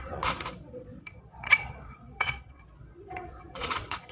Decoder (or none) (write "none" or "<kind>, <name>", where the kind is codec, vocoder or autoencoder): vocoder, Vocos